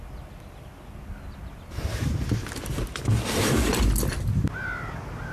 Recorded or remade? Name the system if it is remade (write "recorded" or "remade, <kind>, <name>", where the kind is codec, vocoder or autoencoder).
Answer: recorded